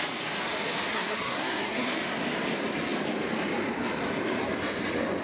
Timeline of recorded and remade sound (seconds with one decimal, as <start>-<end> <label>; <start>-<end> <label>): 0.0-0.9 recorded; 0.9-1.9 remade; 1.9-5.2 recorded